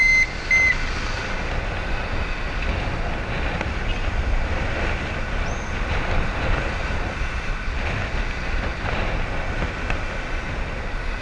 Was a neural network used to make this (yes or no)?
no